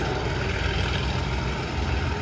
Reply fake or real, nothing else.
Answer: real